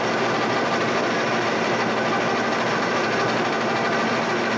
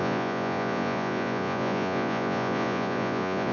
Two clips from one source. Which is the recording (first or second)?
first